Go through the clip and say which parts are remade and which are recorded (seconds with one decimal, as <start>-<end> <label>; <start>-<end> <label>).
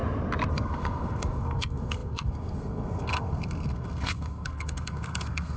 0.0-0.5 recorded; 0.5-5.6 remade